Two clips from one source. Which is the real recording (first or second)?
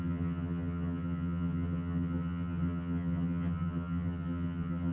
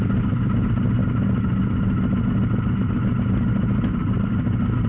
second